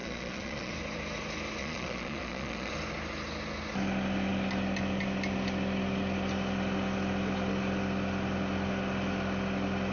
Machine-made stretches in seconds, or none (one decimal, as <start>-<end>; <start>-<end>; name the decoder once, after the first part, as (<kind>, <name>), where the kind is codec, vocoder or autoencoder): 0.0-0.7 (vocoder, Vocos); 1.6-2.7